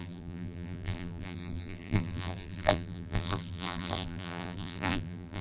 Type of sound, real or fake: fake